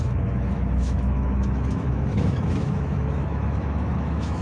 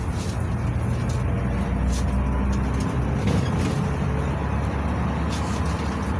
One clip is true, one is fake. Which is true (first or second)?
second